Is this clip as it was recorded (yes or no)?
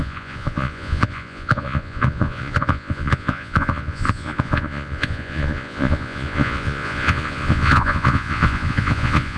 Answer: no